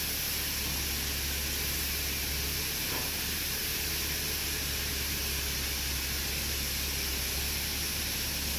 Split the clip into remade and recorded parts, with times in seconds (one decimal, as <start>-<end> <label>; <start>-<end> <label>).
0.0-8.6 recorded